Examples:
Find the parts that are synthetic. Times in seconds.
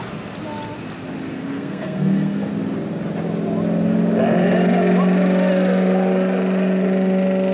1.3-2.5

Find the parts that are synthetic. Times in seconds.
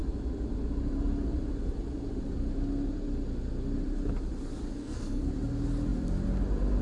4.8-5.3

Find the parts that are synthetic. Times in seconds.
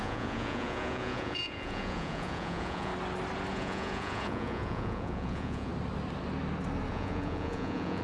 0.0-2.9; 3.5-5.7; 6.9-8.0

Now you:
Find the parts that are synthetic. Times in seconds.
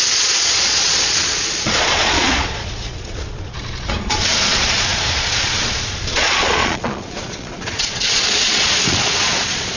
0.0-9.8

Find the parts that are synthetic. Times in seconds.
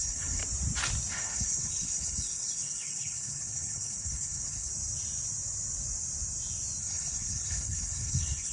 0.0-0.4; 1.1-4.7; 6.8-8.5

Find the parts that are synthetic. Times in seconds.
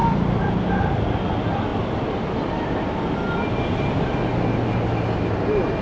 none